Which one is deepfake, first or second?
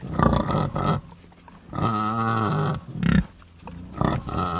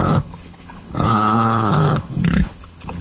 second